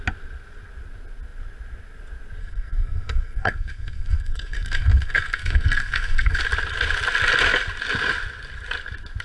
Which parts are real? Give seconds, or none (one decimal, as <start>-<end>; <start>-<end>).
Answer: 0.0-2.4; 6.4-9.2

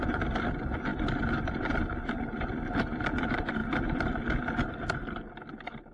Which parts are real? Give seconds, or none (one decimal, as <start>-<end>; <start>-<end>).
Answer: 0.0-5.9

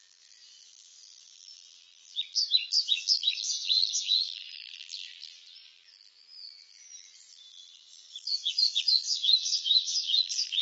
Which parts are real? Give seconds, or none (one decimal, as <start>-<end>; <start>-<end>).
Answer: none

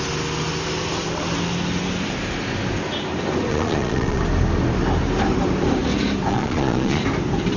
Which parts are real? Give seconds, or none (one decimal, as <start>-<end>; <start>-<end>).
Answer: 0.0-3.5; 4.2-6.3; 7.0-7.6

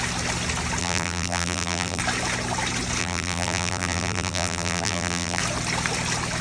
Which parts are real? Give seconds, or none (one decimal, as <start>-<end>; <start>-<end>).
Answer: 0.0-0.8; 2.0-3.0; 5.4-6.4

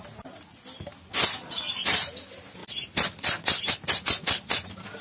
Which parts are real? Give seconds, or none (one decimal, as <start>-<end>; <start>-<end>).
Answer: 0.0-5.0

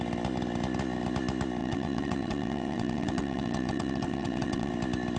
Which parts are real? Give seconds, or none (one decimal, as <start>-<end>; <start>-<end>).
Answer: 0.0-1.6; 4.7-5.2